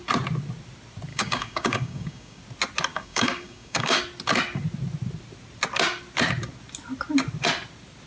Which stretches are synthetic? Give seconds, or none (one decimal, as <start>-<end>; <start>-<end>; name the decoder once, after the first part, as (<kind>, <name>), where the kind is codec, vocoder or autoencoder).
1.1-2.4 (codec, DAC); 2.9-4.0